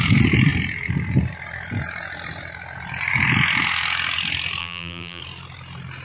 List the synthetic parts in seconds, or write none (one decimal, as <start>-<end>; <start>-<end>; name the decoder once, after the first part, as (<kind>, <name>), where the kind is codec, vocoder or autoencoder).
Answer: 4.6-5.2 (vocoder, BigVGAN v2)